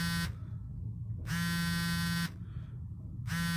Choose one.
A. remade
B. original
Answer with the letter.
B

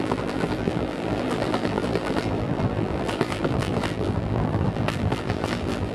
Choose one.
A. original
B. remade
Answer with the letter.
B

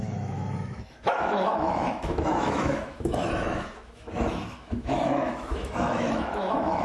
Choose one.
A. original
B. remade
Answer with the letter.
B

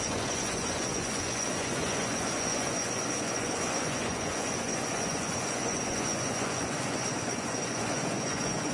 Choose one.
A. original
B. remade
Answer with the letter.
B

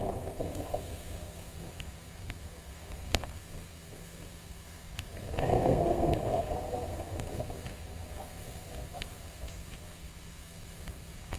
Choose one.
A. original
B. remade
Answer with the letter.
B